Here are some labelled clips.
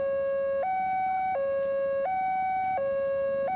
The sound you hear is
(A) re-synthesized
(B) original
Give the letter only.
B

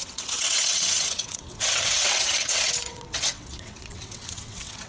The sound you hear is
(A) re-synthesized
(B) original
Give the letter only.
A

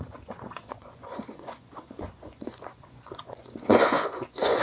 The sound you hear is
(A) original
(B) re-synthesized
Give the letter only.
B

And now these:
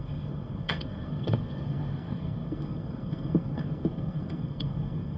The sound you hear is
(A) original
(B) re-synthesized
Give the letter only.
B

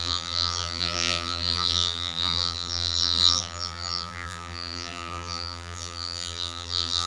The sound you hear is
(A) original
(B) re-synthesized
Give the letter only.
B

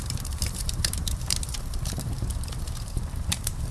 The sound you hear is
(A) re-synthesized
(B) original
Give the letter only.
A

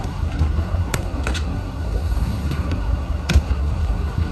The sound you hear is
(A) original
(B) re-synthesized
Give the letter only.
B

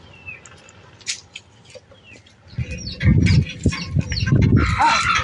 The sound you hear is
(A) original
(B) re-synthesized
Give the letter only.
A